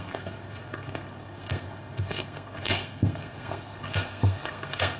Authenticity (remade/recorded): remade